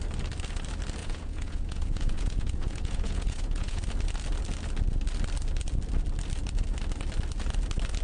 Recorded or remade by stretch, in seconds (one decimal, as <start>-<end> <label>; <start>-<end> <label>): 0.0-1.0 recorded; 1.0-3.8 remade; 3.8-8.0 recorded